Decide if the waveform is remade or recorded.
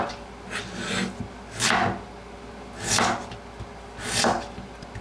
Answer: recorded